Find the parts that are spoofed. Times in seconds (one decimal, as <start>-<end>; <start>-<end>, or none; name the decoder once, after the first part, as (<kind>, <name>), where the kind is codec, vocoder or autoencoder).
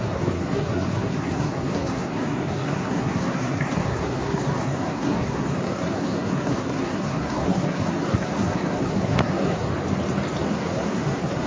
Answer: 0.0-9.7 (codec, SNAC); 10.4-11.5